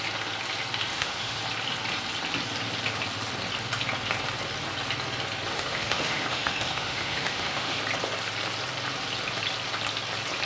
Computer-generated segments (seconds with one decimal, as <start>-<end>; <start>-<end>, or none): 0.9-1.4; 5.5-7.8